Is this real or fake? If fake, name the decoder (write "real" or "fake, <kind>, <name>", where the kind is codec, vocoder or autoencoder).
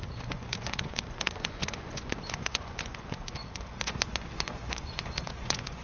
fake, vocoder, Vocos